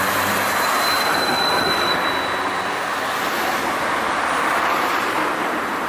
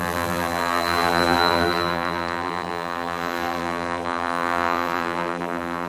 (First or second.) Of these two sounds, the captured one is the first